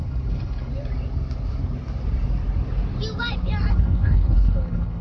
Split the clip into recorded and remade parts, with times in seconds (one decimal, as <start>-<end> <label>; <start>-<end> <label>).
0.0-0.7 remade; 0.7-3.7 recorded; 3.7-5.0 remade